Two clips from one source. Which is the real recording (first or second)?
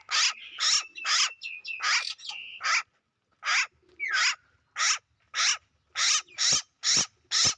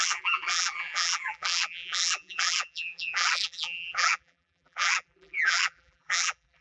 first